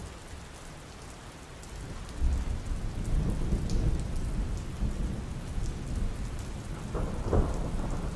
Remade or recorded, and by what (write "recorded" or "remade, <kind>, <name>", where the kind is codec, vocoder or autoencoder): recorded